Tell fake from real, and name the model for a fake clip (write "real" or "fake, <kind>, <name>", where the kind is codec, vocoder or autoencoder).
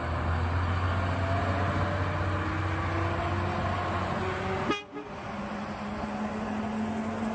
real